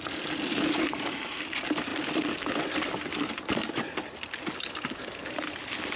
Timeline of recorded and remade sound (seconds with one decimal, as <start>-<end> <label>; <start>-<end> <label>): 0.0-6.0 recorded